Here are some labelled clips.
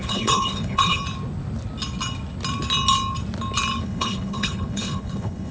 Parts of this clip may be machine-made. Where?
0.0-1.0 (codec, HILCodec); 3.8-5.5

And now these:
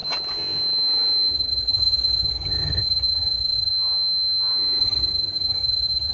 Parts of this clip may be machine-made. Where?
1.3-3.7 (vocoder, HiFi-GAN); 4.8-6.1

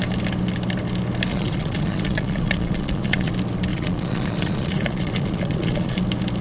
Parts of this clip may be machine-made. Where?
1.3-3.3 (vocoder, Vocos); 3.7-6.0

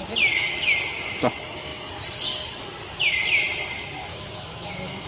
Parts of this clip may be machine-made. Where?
4.1-5.1 (autoencoder, DAC-VAE)

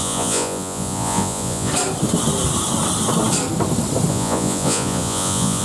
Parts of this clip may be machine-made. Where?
0.0-1.7 (vocoder, Vocos); 4.1-5.6

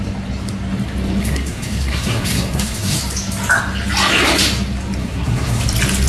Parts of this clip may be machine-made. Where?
1.2-3.0 (codec, SNAC); 5.0-5.6

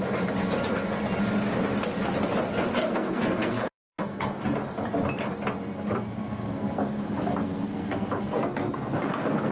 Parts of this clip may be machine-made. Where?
2.8-4.4 (codec, SNAC); 6.2-9.5

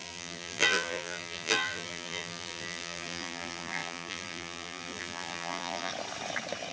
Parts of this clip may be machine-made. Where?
0.0-5.9 (vocoder, BigVGAN v2)